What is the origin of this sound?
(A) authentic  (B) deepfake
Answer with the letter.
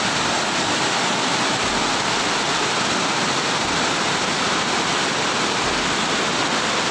A